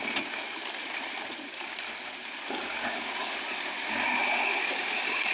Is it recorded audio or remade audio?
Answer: recorded